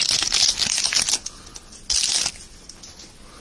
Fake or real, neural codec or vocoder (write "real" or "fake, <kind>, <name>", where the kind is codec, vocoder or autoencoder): real